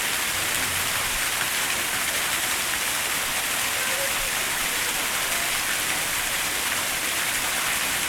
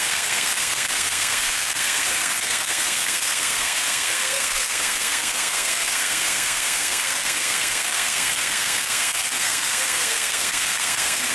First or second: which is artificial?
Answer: second